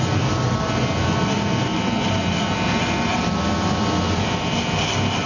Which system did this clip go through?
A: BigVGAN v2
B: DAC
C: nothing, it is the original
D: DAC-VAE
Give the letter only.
C